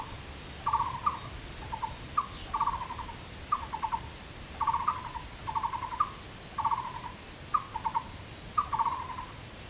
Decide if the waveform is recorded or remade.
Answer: recorded